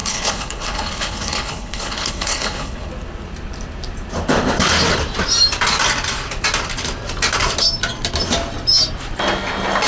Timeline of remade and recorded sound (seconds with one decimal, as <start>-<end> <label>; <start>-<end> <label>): 0.0-2.9 remade; 2.9-9.9 recorded